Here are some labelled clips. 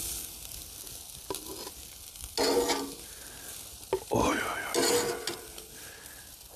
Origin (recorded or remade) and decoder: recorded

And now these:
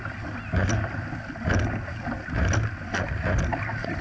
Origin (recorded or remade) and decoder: recorded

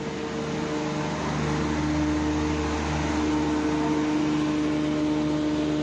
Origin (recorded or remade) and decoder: recorded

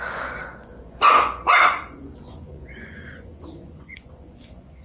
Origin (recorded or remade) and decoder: remade, vocoder, Vocos